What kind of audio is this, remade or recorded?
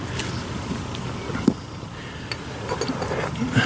recorded